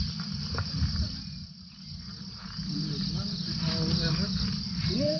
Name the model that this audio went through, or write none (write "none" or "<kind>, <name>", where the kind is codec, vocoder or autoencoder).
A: none